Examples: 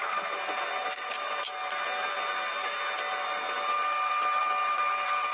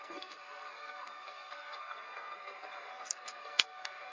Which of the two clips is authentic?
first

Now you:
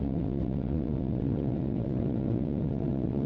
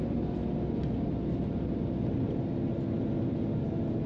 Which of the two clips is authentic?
second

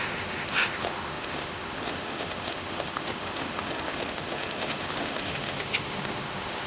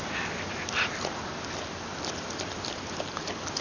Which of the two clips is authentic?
second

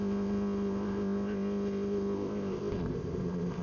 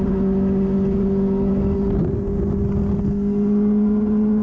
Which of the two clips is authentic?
second